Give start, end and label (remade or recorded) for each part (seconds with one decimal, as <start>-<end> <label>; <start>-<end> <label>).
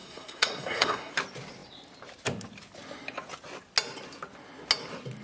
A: 0.0-1.1 remade; 1.1-5.2 recorded